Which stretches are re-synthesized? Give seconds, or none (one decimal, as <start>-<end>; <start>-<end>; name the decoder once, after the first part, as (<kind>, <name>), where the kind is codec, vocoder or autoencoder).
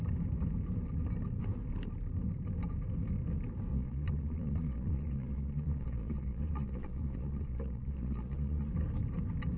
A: 3.7-8.7 (vocoder, Vocos)